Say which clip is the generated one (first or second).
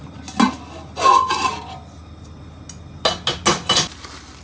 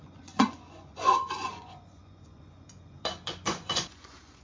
second